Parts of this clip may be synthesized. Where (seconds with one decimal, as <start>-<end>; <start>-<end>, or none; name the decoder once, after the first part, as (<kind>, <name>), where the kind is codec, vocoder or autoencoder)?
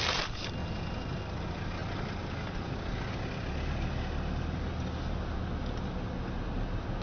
0.6-1.2 (vocoder, BigVGAN v2)